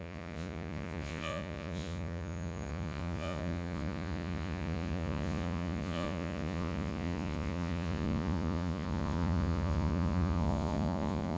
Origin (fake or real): fake